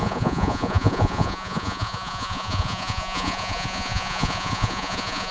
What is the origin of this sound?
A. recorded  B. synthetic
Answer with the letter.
B